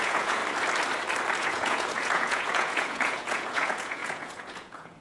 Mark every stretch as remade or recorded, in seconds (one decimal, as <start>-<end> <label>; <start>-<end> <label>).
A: 0.0-0.4 remade; 0.4-1.4 recorded; 1.4-5.0 remade